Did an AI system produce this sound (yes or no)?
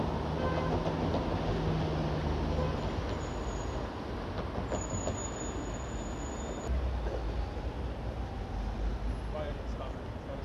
no